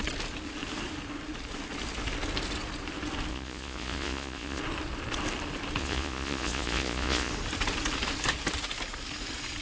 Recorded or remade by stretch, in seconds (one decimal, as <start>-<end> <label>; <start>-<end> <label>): 0.0-3.3 recorded; 3.3-4.6 remade; 4.6-5.8 recorded; 5.8-7.3 remade; 7.3-9.6 recorded